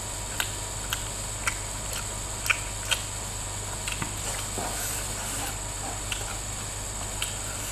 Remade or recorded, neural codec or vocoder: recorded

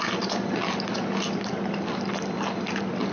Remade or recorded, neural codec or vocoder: recorded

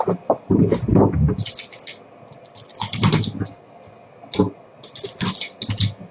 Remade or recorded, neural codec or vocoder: recorded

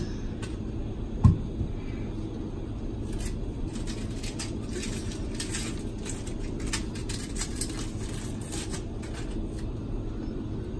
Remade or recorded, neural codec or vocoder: recorded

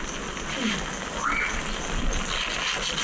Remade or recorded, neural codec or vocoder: recorded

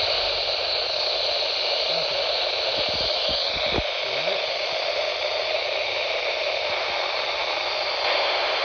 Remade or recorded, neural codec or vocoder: recorded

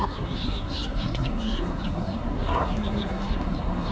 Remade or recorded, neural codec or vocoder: remade, codec, SNAC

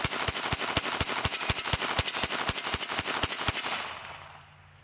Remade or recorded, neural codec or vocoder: recorded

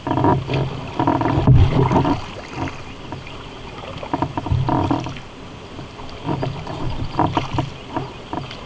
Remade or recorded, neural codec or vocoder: recorded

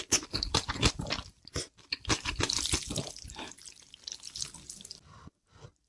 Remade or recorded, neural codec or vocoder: recorded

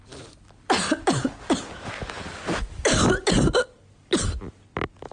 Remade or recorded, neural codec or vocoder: recorded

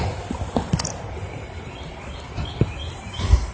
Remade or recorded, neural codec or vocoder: recorded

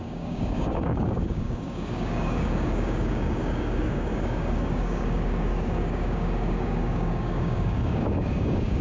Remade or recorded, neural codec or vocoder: remade, codec, DAC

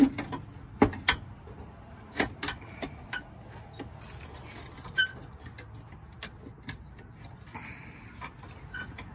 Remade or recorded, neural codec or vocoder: recorded